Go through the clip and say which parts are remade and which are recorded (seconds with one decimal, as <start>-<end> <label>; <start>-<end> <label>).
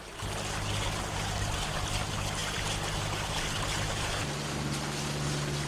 0.0-5.7 recorded